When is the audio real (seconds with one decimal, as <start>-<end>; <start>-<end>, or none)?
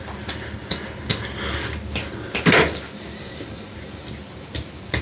0.0-5.0